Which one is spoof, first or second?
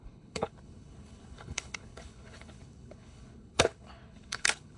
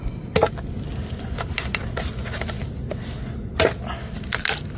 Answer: first